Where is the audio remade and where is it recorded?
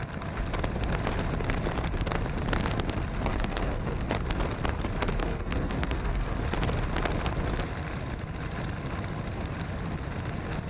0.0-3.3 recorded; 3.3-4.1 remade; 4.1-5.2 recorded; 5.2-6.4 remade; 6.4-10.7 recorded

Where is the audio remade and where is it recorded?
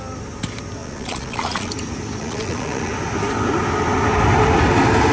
0.0-0.8 recorded; 0.8-1.7 remade; 1.7-2.2 recorded; 2.2-2.9 remade; 2.9-5.1 recorded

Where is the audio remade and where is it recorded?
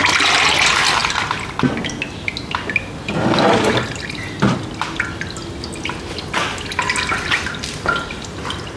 0.0-8.8 recorded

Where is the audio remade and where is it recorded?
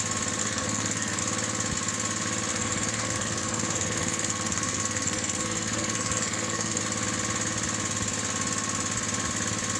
0.0-0.4 recorded; 0.4-1.2 remade; 1.2-2.5 recorded; 2.5-6.8 remade; 6.8-9.8 recorded